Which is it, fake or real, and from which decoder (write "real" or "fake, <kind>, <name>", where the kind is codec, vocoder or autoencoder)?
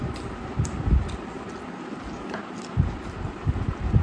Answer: real